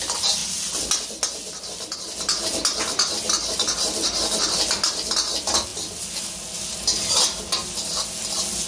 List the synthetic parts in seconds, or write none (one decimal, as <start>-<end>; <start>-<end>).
none